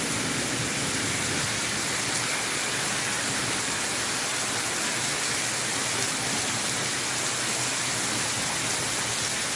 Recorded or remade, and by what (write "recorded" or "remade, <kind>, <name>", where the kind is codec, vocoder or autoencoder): recorded